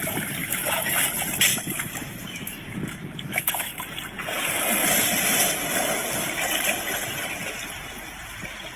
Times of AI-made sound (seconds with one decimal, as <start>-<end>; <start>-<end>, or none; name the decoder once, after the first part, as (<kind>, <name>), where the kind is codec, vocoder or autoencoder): 0.4-0.9 (autoencoder, DAC-VAE); 1.5-3.7